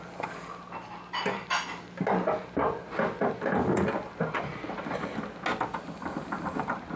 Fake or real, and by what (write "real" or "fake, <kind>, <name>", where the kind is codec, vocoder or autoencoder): real